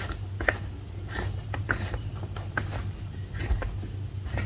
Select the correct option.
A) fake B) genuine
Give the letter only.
B